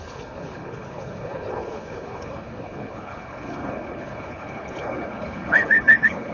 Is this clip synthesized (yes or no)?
yes